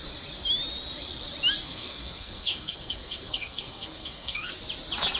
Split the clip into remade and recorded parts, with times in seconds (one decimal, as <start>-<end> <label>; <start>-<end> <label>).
0.0-1.6 recorded; 1.6-4.5 remade; 4.5-5.2 recorded